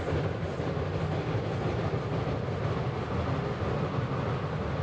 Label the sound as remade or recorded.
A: recorded